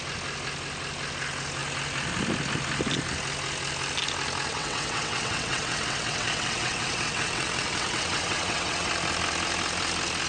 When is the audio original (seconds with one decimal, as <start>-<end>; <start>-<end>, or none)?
0.0-4.5; 8.9-10.3